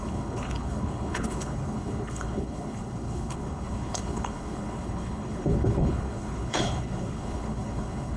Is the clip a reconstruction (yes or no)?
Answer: yes